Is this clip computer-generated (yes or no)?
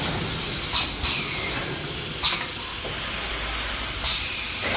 yes